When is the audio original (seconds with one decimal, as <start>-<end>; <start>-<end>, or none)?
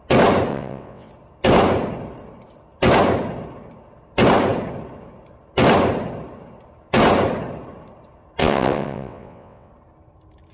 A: 0.0-0.5; 1.1-8.4; 9.7-10.5